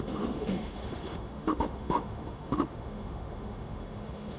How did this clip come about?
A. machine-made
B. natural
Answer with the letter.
A